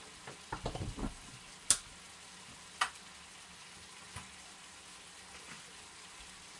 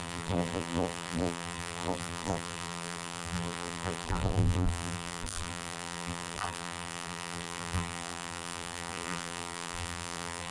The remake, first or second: second